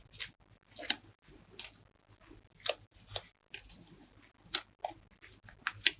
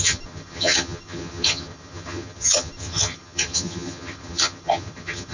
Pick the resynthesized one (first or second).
second